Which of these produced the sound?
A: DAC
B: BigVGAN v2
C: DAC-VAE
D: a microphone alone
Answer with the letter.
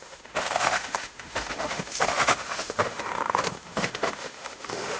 C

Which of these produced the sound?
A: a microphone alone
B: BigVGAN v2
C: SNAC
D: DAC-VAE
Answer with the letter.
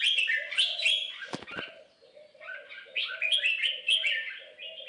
A